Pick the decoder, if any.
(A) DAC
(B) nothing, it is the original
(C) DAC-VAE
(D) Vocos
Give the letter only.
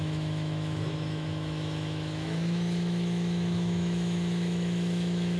C